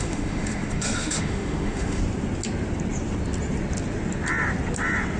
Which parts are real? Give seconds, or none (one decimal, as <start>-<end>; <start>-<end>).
2.0-5.2